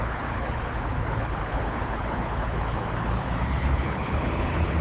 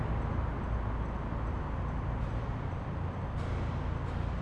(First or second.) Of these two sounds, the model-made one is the first